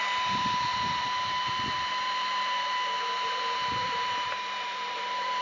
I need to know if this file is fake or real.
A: fake